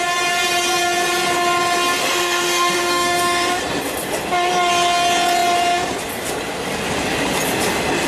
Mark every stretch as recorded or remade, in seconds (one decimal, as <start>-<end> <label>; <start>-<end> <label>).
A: 0.0-2.0 recorded; 2.0-3.6 remade; 3.6-8.1 recorded